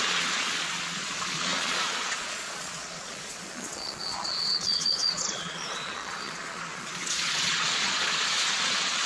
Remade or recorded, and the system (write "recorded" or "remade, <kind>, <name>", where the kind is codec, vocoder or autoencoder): remade, vocoder, Vocos